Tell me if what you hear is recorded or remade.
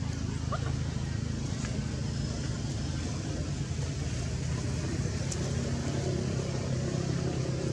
recorded